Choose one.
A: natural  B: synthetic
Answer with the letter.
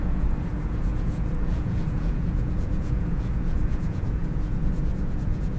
B